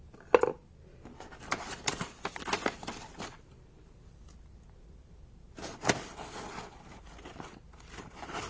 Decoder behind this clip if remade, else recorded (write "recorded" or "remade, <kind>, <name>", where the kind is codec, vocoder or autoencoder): recorded